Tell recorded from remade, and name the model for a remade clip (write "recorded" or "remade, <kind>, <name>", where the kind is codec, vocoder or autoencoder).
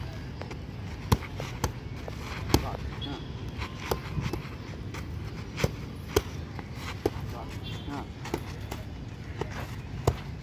recorded